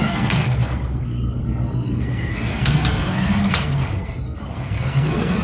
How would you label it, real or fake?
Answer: fake